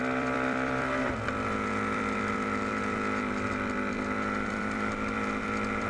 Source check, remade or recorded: remade